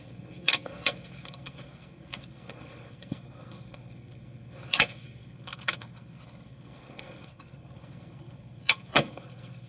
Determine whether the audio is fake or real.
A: fake